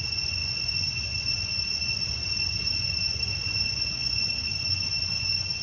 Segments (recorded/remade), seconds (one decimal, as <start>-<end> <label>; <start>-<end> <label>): 0.0-5.6 remade